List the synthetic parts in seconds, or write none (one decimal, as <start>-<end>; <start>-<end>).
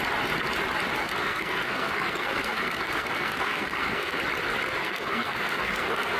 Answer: 1.0-4.2; 4.8-6.2